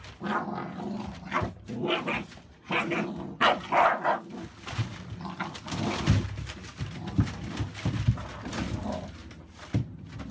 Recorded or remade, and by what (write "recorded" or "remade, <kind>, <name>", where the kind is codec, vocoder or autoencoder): recorded